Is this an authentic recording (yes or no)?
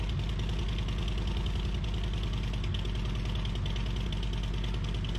yes